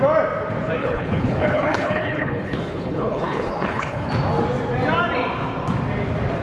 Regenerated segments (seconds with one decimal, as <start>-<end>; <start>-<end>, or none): 0.8-4.1